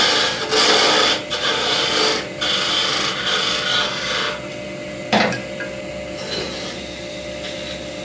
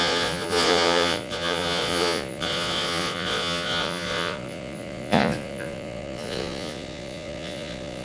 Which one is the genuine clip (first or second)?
first